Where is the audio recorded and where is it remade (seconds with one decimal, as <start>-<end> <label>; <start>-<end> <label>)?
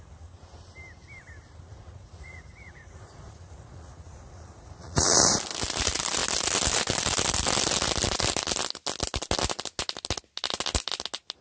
0.0-1.7 recorded; 1.7-5.3 remade; 5.3-11.4 recorded